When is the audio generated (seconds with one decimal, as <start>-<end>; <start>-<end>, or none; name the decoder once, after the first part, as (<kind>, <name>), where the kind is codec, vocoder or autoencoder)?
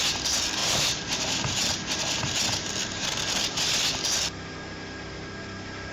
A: 0.6-1.7 (vocoder, BigVGAN v2)